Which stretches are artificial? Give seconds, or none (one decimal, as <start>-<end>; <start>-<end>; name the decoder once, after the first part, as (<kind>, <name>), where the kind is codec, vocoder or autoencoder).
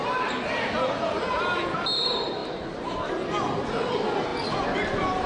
none